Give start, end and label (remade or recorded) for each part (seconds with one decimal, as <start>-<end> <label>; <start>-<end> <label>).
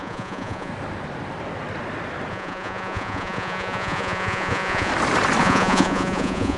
0.0-0.7 remade; 0.7-2.3 recorded; 2.3-4.9 remade; 4.9-5.4 recorded; 5.4-6.6 remade